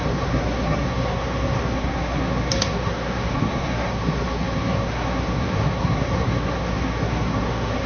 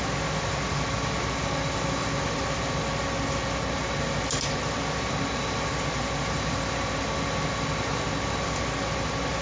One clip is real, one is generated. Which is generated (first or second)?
first